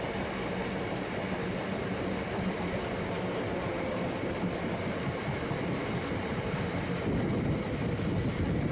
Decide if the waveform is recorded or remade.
recorded